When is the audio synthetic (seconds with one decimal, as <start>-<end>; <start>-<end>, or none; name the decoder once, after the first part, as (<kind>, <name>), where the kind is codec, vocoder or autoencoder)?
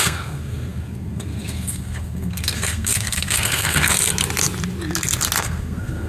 0.0-3.9 (codec, SNAC); 5.4-6.1